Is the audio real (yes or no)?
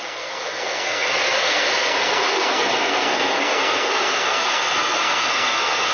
no